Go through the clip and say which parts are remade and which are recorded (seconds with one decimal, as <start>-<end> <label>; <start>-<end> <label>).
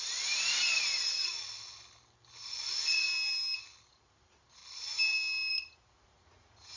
0.0-1.3 remade; 1.3-2.7 recorded; 2.7-3.1 remade; 3.1-3.9 recorded; 3.9-4.6 remade; 4.6-5.5 recorded; 5.5-6.8 remade